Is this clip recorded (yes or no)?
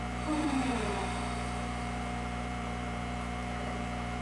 no